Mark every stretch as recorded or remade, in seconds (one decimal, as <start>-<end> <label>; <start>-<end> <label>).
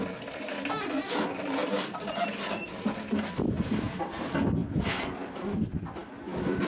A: 0.0-6.7 recorded